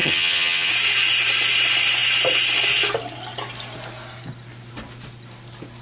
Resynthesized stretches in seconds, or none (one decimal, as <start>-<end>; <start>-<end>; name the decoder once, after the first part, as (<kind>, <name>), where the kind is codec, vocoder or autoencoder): 0.0-0.7 (vocoder, HiFi-GAN)